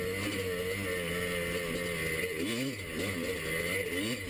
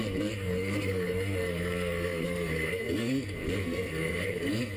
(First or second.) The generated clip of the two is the second